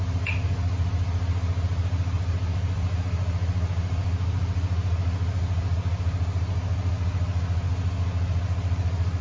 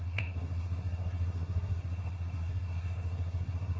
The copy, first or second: second